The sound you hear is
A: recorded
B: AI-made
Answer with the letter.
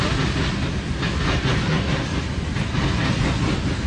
A